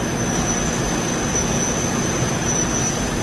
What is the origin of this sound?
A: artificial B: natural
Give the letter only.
B